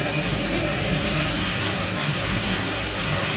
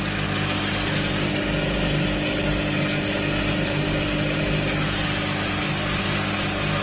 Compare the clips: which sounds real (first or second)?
second